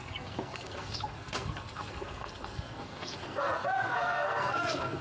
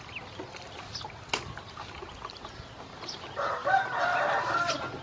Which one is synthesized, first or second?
first